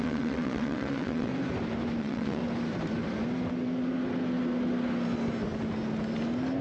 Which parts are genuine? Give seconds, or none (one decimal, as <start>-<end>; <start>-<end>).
1.3-2.0; 2.4-6.6